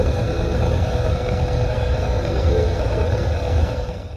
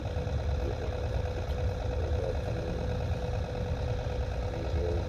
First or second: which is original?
second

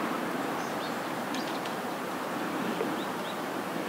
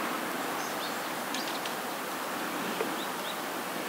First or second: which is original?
second